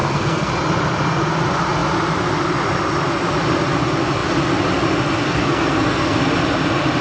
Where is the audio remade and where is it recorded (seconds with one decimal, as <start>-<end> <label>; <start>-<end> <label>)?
0.0-0.5 remade; 0.5-5.4 recorded; 5.4-6.2 remade; 6.2-7.0 recorded